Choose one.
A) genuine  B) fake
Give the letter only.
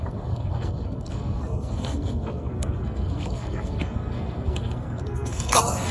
B